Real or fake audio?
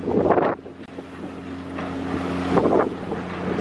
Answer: real